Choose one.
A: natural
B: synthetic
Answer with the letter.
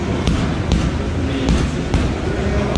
A